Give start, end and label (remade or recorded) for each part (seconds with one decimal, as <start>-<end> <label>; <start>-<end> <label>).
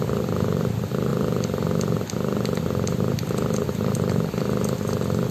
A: 0.0-5.3 recorded